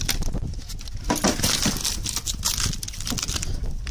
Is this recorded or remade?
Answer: recorded